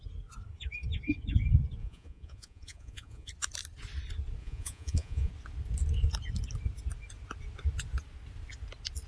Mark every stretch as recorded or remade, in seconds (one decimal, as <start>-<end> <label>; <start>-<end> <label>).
0.0-1.8 recorded; 1.8-3.3 remade; 3.3-4.4 recorded; 4.4-5.3 remade; 5.3-9.1 recorded